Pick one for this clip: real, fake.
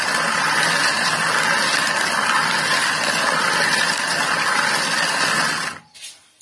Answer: real